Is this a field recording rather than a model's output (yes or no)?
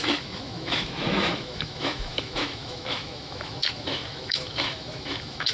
no